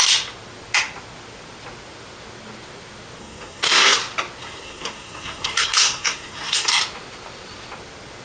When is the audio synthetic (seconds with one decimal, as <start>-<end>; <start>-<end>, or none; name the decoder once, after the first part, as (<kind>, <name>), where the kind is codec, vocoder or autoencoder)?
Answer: 3.2-4.0 (codec, SNAC); 4.4-6.8